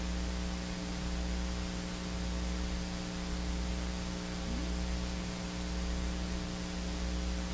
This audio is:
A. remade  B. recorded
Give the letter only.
B